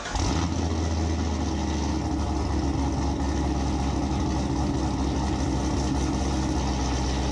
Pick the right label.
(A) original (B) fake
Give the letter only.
A